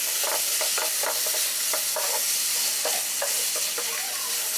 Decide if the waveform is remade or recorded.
recorded